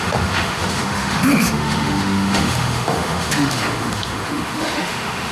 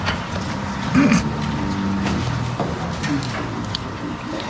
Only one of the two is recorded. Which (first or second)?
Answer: second